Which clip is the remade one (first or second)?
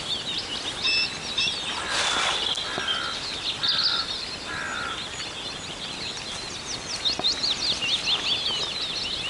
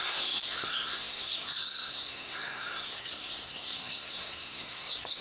second